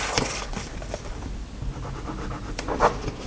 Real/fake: real